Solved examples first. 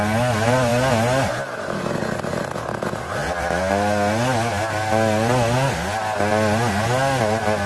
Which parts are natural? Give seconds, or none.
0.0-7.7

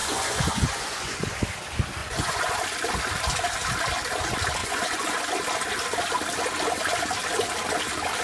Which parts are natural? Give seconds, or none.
1.3-2.0; 2.5-4.6; 5.2-8.2

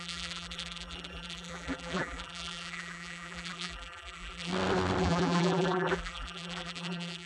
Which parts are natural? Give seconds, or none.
4.5-5.0